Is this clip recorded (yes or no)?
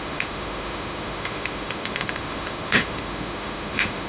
no